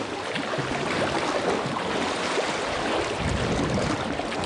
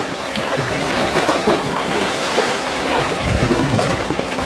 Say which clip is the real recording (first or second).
first